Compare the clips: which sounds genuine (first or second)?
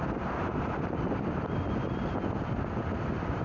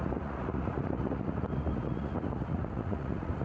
first